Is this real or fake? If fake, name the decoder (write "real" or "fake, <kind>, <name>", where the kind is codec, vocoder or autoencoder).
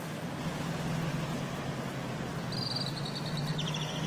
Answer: real